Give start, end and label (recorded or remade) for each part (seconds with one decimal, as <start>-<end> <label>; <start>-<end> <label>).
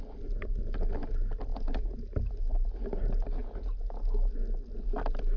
0.0-1.5 recorded; 1.5-2.0 remade; 2.0-3.4 recorded; 3.4-4.0 remade; 4.0-5.4 recorded